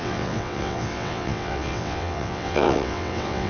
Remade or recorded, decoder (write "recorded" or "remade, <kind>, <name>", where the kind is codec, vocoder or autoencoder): remade, vocoder, WaveNeXt